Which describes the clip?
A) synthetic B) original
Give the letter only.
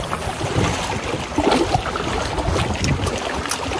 B